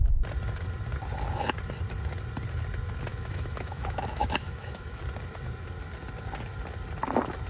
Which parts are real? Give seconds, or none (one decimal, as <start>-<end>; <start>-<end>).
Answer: 0.0-3.1; 5.0-7.5